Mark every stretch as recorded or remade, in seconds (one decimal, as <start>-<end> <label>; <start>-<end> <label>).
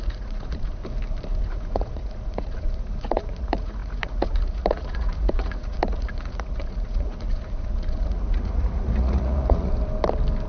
0.0-0.8 remade; 0.8-1.4 recorded; 1.4-9.7 remade; 9.7-10.5 recorded